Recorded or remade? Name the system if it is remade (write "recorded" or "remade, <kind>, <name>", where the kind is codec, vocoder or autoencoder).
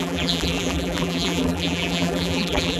remade, vocoder, BigVGAN v2